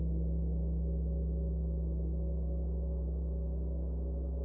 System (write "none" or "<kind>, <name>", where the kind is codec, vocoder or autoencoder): none